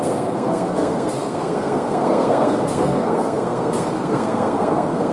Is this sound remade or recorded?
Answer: remade